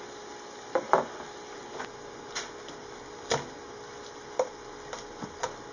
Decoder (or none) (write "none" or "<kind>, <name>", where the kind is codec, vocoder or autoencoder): none